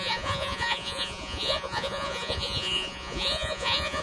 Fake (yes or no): yes